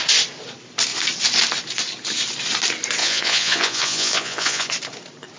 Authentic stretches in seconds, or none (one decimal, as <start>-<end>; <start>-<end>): 0.0-3.0; 4.7-5.4

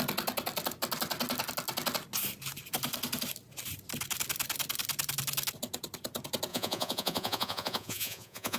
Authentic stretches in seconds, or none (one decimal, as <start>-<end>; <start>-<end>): 0.0-6.5